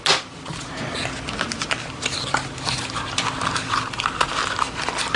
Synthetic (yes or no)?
no